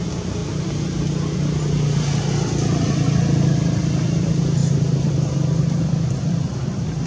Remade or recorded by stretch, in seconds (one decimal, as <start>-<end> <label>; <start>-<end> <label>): 0.0-0.4 remade; 0.4-1.6 recorded; 1.6-7.1 remade